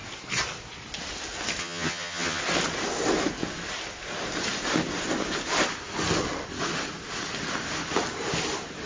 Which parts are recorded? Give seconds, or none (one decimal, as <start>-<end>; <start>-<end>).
0.0-1.6; 2.4-8.9